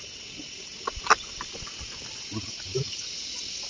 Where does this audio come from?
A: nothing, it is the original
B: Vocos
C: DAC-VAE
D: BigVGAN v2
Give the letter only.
A